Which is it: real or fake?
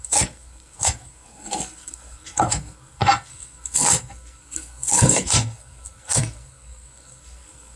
fake